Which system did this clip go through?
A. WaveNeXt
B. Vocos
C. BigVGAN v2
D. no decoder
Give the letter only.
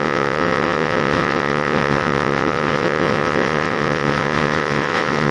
A